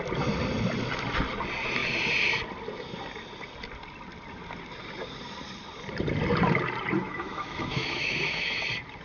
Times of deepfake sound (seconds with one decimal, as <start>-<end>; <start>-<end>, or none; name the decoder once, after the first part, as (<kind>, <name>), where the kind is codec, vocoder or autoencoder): 7.0-8.6 (autoencoder, DAC-VAE)